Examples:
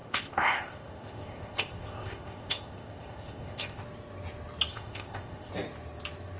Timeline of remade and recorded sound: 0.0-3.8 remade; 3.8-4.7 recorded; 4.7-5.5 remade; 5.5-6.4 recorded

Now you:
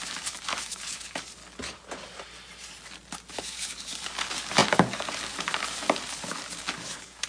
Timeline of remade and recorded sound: 0.0-1.4 remade; 1.4-3.3 recorded; 3.3-7.3 remade